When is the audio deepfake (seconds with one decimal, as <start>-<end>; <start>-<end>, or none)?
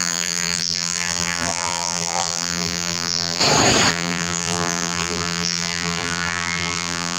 0.0-3.4; 3.9-7.2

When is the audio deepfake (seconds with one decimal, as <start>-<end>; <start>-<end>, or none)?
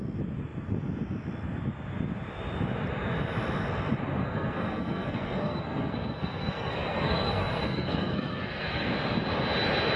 4.2-8.9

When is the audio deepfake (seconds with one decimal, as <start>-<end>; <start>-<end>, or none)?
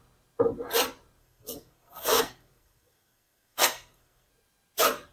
1.2-4.3